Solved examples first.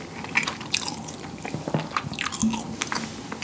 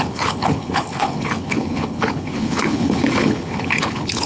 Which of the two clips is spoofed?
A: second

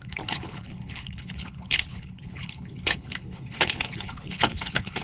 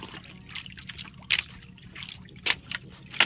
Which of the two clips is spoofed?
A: first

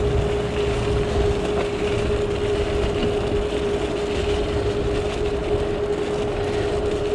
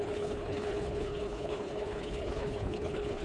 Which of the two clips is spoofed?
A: second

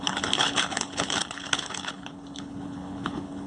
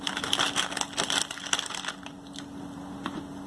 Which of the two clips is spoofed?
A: first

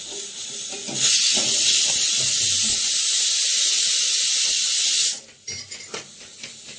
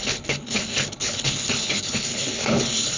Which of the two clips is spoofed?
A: second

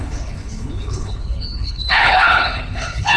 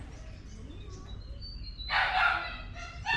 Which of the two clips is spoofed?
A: first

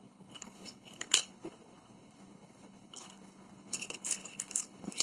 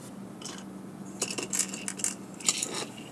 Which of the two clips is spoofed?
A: first